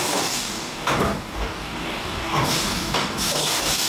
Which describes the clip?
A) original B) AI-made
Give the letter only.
B